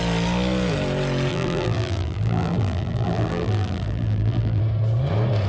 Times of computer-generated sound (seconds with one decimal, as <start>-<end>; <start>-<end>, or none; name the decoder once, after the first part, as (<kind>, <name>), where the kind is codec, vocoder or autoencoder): 1.3-4.6 (vocoder, BigVGAN v2)